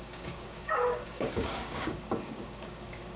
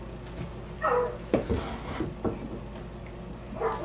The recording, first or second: second